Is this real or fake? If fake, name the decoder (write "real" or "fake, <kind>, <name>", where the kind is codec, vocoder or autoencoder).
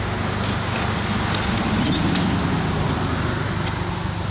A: real